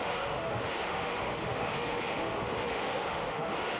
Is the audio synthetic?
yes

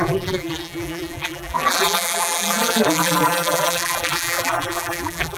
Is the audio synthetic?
yes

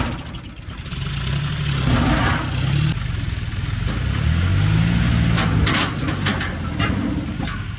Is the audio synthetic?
no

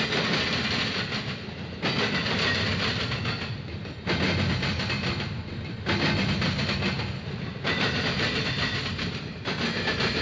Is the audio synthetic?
no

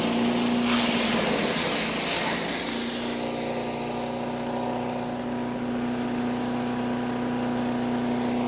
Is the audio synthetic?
no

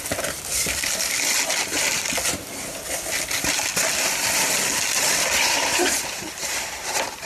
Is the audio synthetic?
no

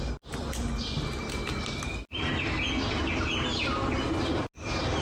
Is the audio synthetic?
no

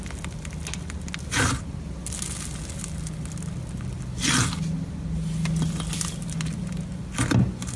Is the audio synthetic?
no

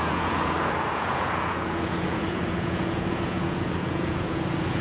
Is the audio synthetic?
yes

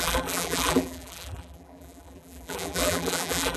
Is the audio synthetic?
yes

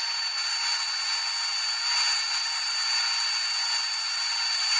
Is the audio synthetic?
no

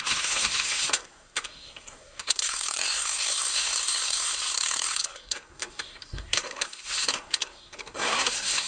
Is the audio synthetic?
yes